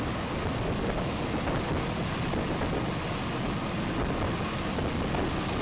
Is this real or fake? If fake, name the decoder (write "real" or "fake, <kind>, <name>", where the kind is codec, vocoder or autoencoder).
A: real